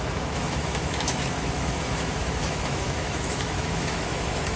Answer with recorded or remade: remade